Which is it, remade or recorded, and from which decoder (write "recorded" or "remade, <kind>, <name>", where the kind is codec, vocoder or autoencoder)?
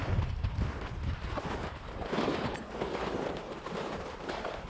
remade, vocoder, BigVGAN v2